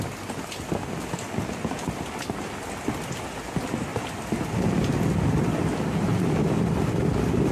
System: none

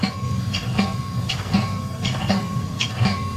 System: codec, SNAC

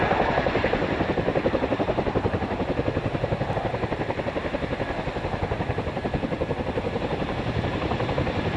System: none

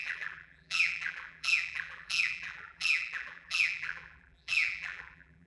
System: vocoder, BigVGAN v2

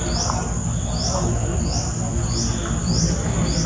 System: none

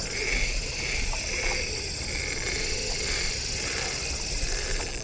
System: none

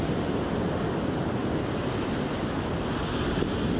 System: none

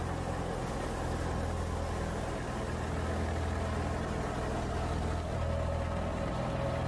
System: none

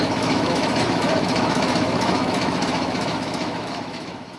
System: autoencoder, DAC-VAE